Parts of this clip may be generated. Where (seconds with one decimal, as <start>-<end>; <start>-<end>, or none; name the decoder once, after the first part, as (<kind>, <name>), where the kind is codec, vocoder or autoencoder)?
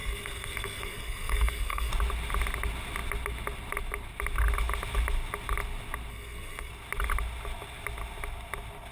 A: 0.0-1.9 (codec, SNAC); 6.1-6.7